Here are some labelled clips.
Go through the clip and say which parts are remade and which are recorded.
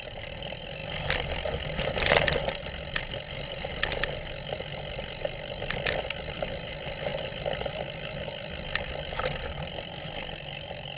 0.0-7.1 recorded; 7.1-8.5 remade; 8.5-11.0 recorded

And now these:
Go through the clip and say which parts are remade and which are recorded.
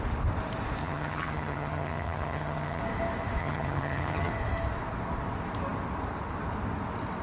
0.0-0.8 recorded; 0.8-2.8 remade; 2.8-3.4 recorded; 3.4-4.3 remade; 4.3-7.2 recorded